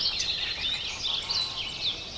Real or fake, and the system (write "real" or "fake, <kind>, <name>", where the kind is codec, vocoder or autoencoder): real